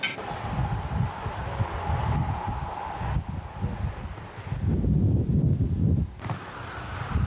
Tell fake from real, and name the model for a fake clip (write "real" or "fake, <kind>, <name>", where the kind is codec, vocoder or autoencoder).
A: real